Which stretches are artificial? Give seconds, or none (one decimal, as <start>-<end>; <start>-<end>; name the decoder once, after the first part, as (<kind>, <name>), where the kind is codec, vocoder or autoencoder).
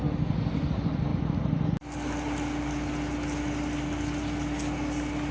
none